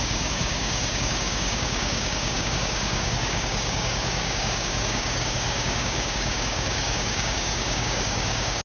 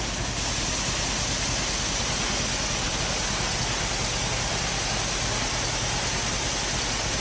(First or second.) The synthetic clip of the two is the first